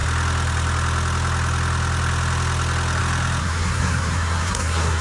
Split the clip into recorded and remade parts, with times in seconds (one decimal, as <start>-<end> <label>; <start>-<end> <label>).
0.0-3.4 recorded; 3.4-5.0 remade